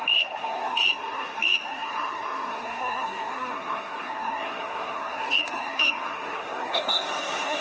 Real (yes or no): no